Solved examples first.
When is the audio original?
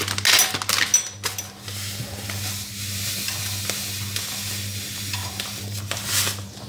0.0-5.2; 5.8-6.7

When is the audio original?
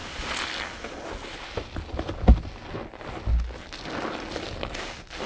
0.0-5.3